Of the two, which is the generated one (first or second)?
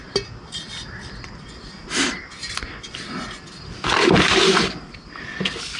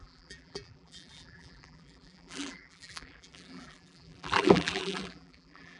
second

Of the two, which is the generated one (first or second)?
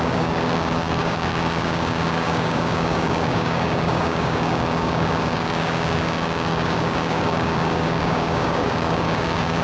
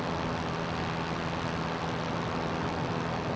first